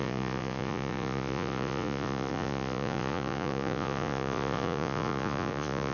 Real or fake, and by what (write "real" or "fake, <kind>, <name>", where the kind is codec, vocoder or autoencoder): fake, vocoder, Vocos